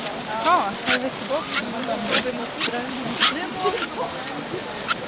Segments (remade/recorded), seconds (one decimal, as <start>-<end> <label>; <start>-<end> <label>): 0.0-1.6 recorded; 1.6-2.7 remade; 2.7-5.1 recorded